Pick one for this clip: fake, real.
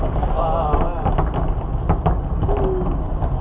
real